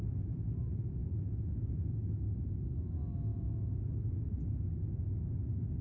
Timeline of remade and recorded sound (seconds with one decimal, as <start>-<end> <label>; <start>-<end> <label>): 0.0-1.0 recorded; 1.0-2.5 remade; 2.5-3.3 recorded; 3.3-4.3 remade; 4.3-5.8 recorded